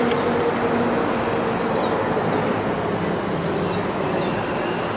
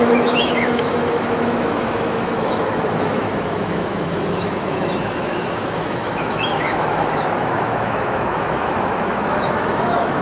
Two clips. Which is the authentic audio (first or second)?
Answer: first